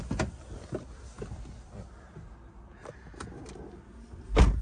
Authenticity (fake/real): real